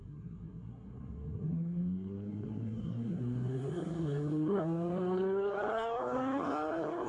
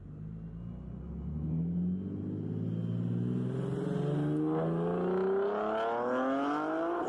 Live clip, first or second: second